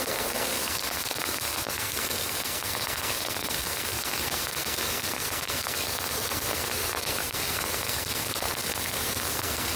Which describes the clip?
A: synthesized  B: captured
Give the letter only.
A